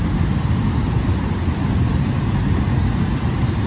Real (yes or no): yes